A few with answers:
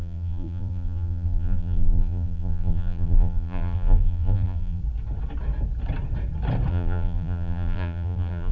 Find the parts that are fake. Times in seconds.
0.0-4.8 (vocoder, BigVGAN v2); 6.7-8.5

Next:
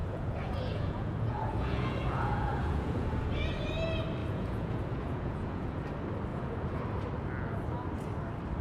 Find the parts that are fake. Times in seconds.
0.0-3.2 (vocoder, Vocos); 4.2-5.8; 6.3-6.8

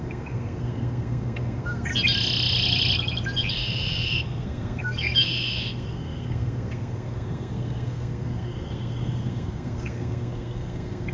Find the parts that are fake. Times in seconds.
0.0-1.9 (codec, SNAC); 3.5-11.1

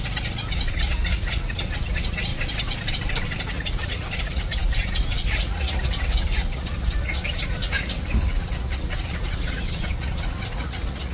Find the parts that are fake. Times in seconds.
0.0-2.3 (vocoder, Vocos); 3.4-11.1

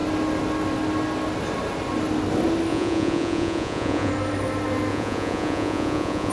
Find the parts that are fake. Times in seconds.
2.7-4.1 (vocoder, Vocos); 4.9-6.3

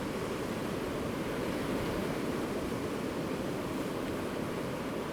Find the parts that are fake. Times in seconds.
2.0-2.8 (vocoder, BigVGAN v2)